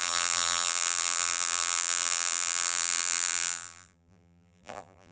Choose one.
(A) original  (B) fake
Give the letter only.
B